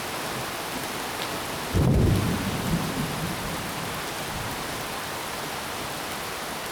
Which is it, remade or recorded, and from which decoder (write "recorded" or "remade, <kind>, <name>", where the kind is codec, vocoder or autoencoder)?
recorded